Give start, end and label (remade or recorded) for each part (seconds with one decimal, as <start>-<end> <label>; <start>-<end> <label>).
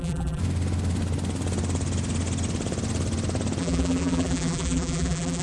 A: 0.0-0.4 remade; 0.4-3.6 recorded; 3.6-5.4 remade